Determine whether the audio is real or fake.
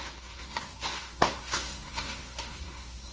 fake